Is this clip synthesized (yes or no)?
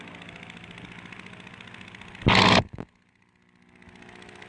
no